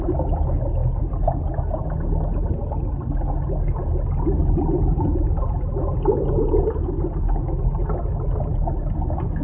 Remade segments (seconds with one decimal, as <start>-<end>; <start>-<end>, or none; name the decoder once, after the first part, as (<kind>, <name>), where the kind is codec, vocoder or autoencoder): none